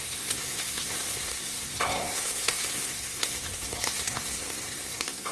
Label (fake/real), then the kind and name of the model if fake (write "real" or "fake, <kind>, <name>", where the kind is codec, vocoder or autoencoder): fake, codec, SNAC